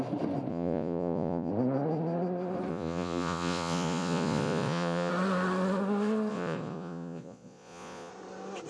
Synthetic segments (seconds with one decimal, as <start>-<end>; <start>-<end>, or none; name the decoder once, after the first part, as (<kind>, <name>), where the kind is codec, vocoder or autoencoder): 0.5-1.5 (vocoder, Vocos); 2.7-5.1; 6.3-8.1